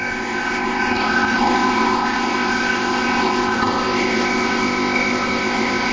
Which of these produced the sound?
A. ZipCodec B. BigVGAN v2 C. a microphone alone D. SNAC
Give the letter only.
A